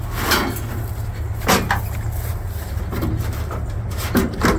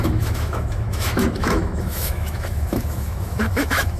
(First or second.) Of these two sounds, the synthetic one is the second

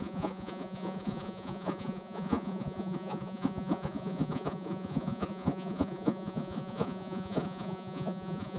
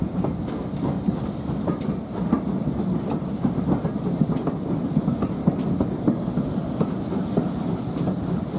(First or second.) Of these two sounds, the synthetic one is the first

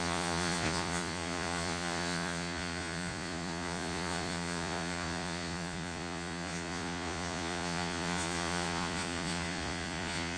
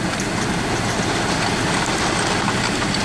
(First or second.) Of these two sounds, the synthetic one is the first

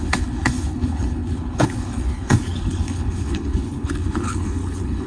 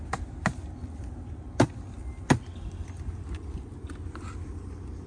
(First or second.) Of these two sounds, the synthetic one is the first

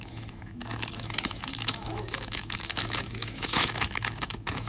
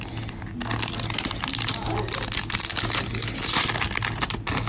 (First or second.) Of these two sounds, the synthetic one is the first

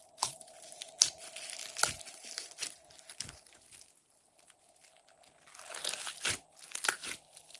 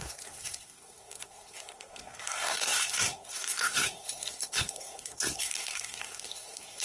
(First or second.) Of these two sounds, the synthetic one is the second